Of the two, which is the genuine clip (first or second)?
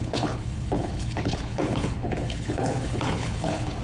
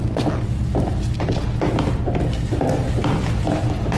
second